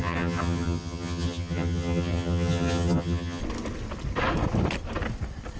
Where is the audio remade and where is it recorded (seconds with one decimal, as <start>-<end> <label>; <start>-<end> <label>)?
0.0-3.4 remade; 3.4-5.6 recorded